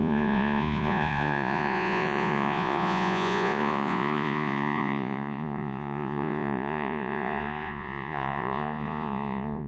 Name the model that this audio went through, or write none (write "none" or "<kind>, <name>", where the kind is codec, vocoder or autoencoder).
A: vocoder, Vocos